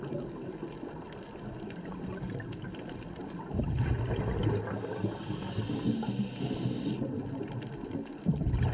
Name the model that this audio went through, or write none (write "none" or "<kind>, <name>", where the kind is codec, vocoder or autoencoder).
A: none